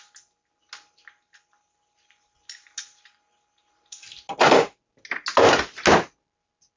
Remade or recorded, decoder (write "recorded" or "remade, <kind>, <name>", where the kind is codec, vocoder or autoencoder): recorded